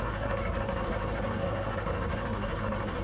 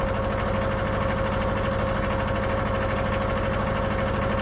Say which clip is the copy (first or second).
first